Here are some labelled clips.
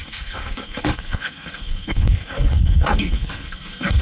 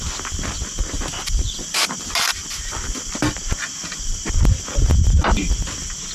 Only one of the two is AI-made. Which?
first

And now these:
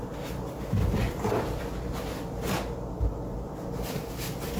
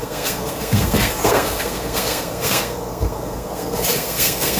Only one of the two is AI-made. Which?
second